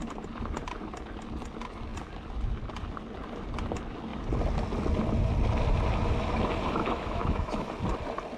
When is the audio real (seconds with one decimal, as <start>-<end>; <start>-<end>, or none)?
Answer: 0.0-6.8; 7.7-8.4